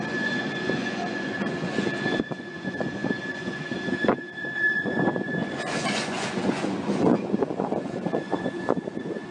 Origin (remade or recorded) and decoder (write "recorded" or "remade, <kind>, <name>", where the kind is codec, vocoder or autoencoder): remade, vocoder, Vocos